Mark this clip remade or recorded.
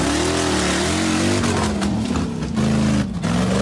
recorded